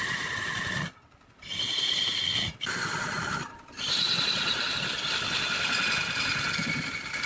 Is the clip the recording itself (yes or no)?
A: yes